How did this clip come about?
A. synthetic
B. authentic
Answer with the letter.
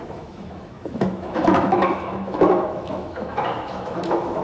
A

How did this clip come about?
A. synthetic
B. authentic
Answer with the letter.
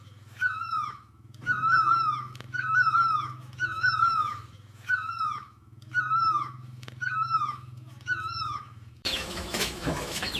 A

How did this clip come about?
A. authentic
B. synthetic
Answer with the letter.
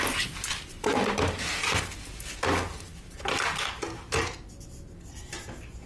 A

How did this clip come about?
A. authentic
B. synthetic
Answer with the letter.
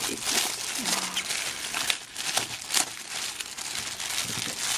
A